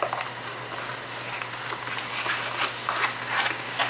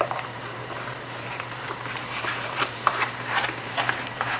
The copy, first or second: second